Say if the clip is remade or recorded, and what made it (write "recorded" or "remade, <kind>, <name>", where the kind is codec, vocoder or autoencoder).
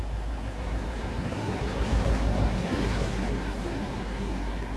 remade, codec, SNAC